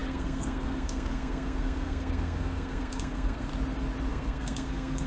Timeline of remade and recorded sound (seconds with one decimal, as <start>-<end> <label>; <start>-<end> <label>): 0.0-3.5 remade; 3.5-4.1 recorded; 4.1-5.1 remade